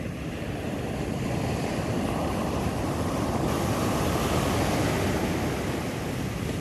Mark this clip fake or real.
real